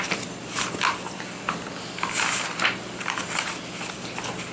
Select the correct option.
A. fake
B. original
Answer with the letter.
B